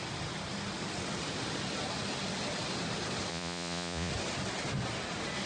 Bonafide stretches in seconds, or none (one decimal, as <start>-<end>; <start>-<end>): 0.0-3.3; 4.1-5.5